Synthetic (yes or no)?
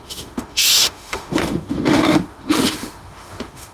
yes